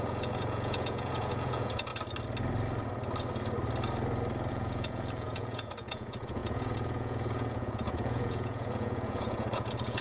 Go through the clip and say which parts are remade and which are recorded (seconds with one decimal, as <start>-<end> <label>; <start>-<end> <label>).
0.0-1.9 remade; 1.9-4.5 recorded; 4.5-10.0 remade